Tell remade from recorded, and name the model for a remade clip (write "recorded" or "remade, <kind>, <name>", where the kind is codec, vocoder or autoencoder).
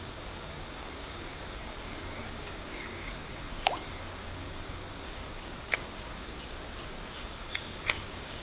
remade, codec, DAC